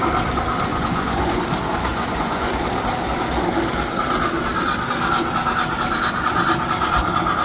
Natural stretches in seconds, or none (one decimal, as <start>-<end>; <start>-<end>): 0.0-0.7; 1.4-1.9; 2.5-7.4